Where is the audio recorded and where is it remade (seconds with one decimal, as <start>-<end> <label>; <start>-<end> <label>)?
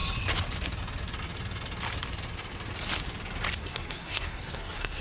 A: 0.0-3.6 recorded; 3.6-5.0 remade